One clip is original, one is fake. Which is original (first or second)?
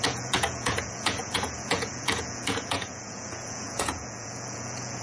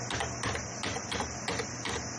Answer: second